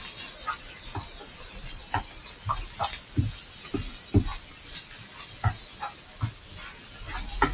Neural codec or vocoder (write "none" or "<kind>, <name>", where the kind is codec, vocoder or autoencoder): none